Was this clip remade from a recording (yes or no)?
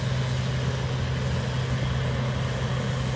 no